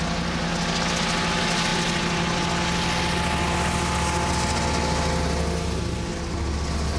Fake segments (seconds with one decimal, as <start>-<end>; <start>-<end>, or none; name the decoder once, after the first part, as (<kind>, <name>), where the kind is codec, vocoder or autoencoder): none